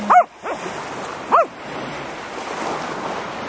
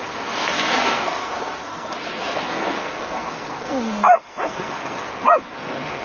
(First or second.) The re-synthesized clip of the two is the second